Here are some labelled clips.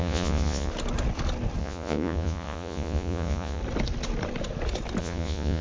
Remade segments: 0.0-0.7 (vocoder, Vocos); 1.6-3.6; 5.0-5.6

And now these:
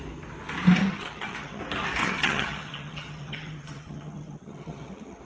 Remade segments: 0.8-1.6 (vocoder, HiFi-GAN); 2.0-5.2

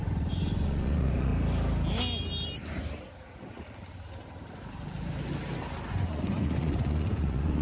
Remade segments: 0.0-1.3 (vocoder, Vocos); 5.9-7.6

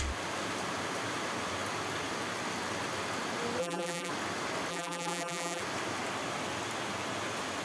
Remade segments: 3.6-4.1 (vocoder, BigVGAN v2); 4.7-5.6

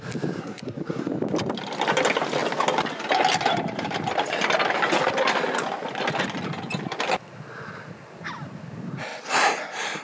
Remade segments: 0.4-1.0 (codec, SNAC)

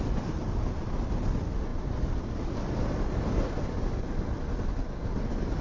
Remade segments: none

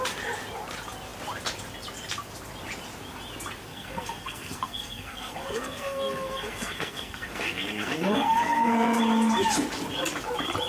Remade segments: 3.7-9.0 (codec, SNAC)

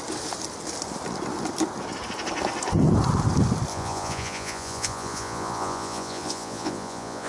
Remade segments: 3.7-7.3 (vocoder, Vocos)